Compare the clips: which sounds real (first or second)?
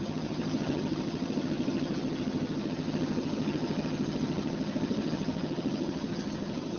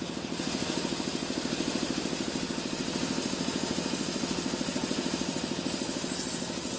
second